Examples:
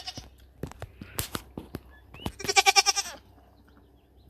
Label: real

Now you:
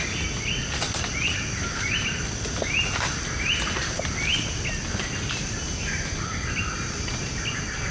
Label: real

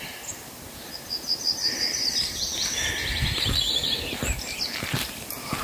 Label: real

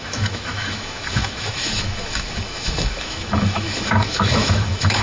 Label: fake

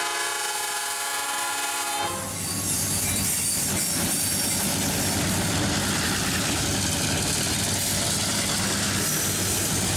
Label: real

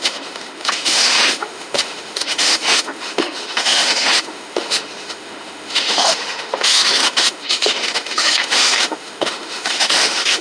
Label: fake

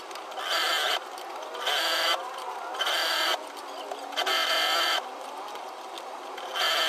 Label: real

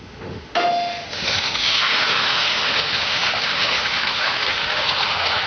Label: fake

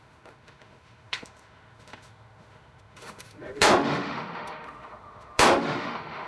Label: fake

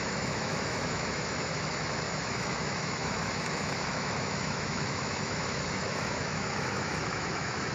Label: fake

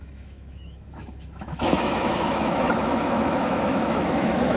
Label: fake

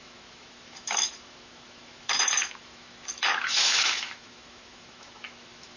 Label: fake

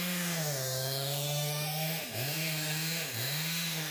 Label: fake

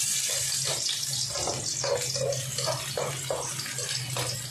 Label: real